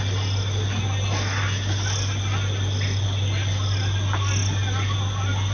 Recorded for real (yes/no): yes